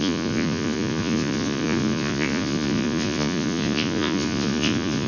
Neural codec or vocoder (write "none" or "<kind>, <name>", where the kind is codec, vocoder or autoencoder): vocoder, Vocos